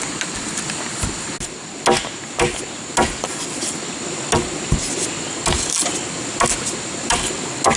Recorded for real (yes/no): yes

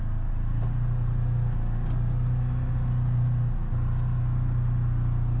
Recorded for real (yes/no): yes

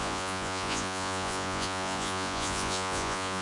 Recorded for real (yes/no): no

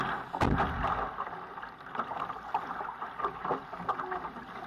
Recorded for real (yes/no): yes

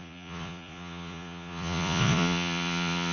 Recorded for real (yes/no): no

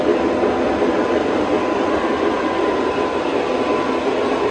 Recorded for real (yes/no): yes